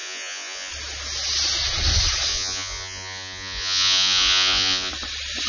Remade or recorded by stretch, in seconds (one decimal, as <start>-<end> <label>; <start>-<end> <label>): 0.0-0.7 remade; 0.7-2.3 recorded; 2.3-4.9 remade; 4.9-5.5 recorded

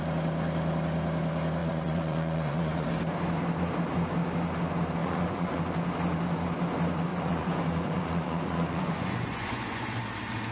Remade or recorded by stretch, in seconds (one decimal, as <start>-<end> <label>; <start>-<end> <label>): 0.0-1.6 recorded; 1.6-2.9 remade; 2.9-5.0 recorded; 5.0-5.6 remade; 5.6-7.1 recorded; 7.1-10.0 remade; 10.0-10.5 recorded

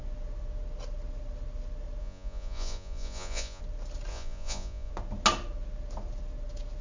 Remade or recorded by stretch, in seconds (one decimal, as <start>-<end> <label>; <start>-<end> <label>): 0.0-2.0 recorded; 2.0-3.6 remade; 3.6-4.1 recorded; 4.1-4.9 remade; 4.9-6.8 recorded

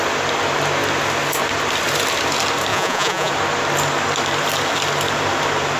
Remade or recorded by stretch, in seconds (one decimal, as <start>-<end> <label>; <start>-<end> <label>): 0.0-2.7 recorded; 2.7-3.3 remade; 3.3-5.8 recorded

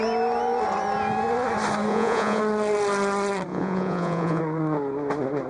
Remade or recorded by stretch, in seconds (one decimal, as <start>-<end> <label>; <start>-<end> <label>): 0.0-1.9 recorded; 1.9-2.4 remade; 2.4-3.5 recorded; 3.5-4.4 remade; 4.4-5.5 recorded